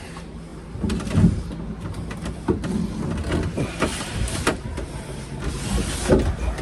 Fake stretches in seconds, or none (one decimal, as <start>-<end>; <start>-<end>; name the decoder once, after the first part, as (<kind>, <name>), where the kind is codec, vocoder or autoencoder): 3.9-5.4 (vocoder, BigVGAN v2)